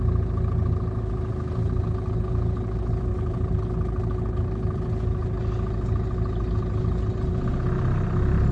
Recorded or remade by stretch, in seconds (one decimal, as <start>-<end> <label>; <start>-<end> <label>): 0.0-8.5 recorded